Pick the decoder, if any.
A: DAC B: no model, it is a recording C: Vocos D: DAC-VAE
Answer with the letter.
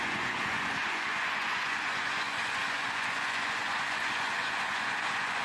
C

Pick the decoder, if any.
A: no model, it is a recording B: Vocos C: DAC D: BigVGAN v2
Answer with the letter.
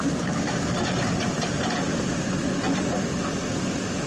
A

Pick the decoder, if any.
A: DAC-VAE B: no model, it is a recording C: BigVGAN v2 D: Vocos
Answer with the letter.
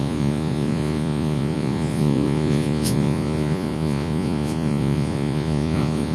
D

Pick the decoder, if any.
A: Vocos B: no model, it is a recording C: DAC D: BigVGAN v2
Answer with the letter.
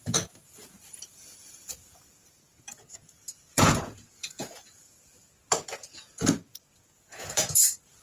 A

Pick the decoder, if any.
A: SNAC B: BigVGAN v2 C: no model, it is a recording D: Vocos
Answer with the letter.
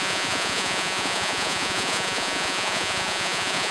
D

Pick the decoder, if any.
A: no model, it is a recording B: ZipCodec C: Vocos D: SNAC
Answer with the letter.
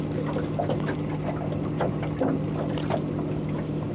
A